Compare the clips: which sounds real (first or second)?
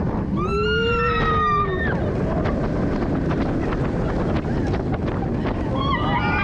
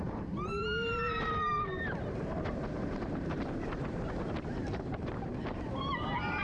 first